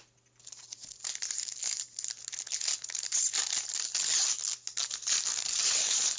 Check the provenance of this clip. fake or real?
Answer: real